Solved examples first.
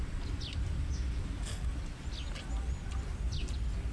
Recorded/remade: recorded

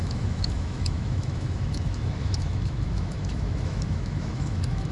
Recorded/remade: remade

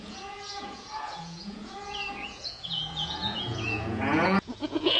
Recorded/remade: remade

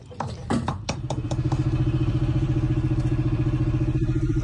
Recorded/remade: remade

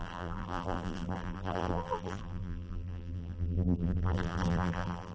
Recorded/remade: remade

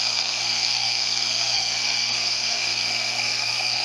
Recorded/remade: remade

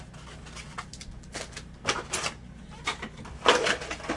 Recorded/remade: recorded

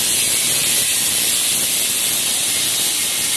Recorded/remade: recorded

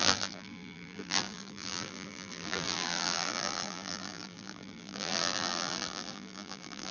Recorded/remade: remade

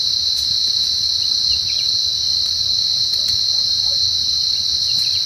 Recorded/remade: remade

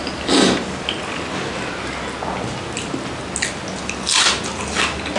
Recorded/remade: recorded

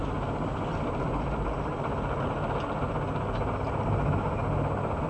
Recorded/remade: recorded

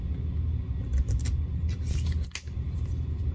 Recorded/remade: recorded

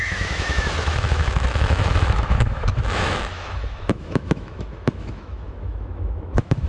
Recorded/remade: remade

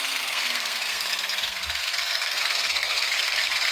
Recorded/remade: remade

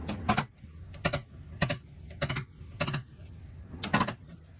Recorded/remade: recorded